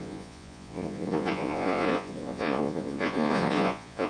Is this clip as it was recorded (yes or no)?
no